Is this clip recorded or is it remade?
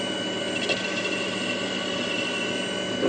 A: recorded